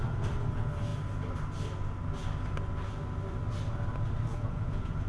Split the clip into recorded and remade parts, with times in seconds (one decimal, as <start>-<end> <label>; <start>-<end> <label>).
0.0-4.3 recorded; 4.3-5.1 remade